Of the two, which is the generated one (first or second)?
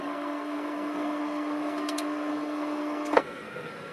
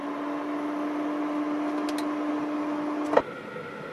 first